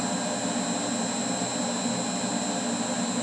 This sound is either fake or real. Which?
real